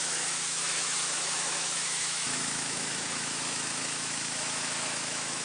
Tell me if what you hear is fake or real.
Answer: fake